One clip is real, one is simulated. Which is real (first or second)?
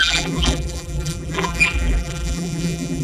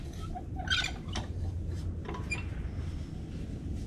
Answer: second